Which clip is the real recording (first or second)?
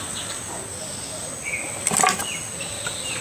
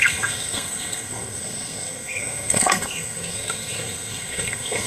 first